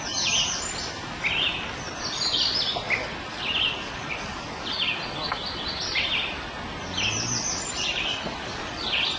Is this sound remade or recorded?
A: recorded